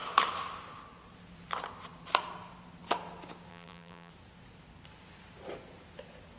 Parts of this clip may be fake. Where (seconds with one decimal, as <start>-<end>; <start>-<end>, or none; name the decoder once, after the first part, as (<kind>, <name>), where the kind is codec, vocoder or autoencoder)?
3.5-4.1 (vocoder, BigVGAN v2)